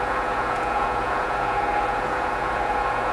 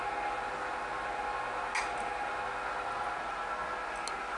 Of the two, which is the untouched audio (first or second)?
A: second